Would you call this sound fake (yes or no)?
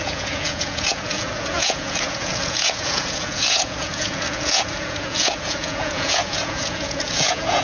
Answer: yes